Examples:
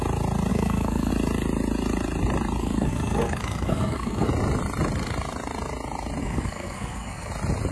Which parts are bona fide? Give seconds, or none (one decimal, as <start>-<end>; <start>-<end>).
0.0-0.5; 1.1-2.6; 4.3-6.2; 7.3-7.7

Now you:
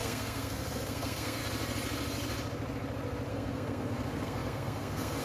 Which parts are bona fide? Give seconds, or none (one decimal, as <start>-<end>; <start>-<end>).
1.4-3.3

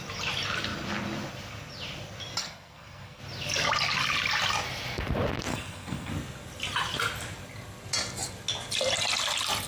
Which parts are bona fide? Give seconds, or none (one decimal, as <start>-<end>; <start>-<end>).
0.0-2.4; 3.2-5.5; 6.1-9.7

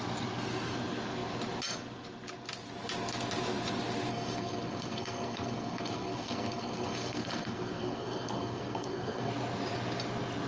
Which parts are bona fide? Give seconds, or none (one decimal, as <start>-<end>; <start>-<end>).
0.0-4.1; 9.3-10.5

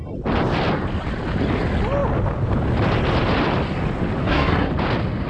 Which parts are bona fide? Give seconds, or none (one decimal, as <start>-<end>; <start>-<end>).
0.0-4.2; 4.7-5.3

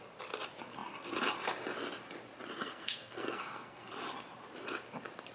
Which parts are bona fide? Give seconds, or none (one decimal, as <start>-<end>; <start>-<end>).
0.0-2.6; 3.9-5.3